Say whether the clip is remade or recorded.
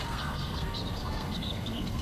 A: remade